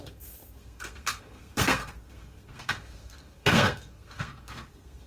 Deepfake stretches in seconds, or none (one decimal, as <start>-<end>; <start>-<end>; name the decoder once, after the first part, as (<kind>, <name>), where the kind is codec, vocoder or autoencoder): 0.0-5.1 (codec, SNAC)